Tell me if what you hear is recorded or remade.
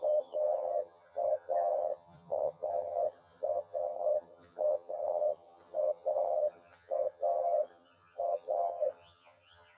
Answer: remade